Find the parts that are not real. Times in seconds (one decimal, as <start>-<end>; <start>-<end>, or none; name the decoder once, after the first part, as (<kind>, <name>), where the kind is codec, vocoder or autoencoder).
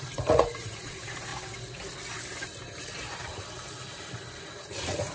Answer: 0.0-1.3 (vocoder, Vocos); 4.4-5.1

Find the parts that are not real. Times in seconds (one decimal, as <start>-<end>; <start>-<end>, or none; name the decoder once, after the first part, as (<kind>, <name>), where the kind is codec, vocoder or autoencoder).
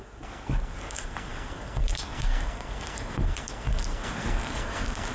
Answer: 0.0-5.1 (codec, SNAC)